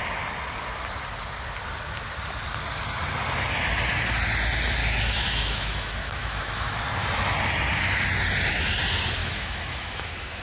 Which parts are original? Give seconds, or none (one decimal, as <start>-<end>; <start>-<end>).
0.0-4.8; 6.8-9.2